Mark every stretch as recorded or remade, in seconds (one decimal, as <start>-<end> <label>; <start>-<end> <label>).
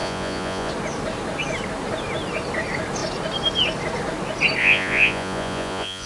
0.0-0.7 remade; 0.7-4.6 recorded; 4.6-6.1 remade